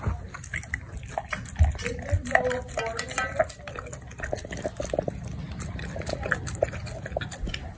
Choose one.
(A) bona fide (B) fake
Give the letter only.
A